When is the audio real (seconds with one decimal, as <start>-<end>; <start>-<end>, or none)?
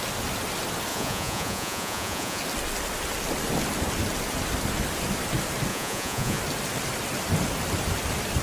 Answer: 0.0-0.9; 2.4-5.7; 6.4-8.4